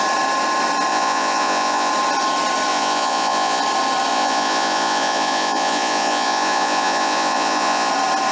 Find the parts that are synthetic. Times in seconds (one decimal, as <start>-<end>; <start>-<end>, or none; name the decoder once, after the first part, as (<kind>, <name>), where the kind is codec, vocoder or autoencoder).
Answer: 0.9-1.9 (vocoder, Vocos); 2.7-3.6; 4.1-7.9